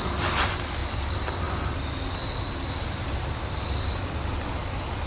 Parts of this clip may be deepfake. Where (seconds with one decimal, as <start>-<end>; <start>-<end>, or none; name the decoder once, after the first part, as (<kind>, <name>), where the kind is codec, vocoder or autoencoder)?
none